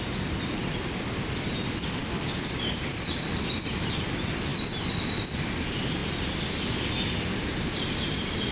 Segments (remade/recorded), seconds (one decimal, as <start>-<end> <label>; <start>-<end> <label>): 0.0-6.0 recorded; 6.0-8.5 remade